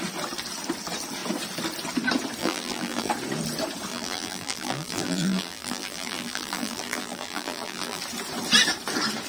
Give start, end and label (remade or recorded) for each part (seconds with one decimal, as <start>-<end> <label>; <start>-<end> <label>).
0.0-2.4 recorded; 2.4-3.1 remade; 3.1-3.9 recorded; 3.9-8.0 remade; 8.0-9.3 recorded